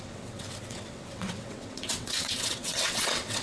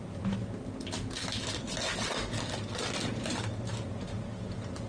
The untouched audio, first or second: second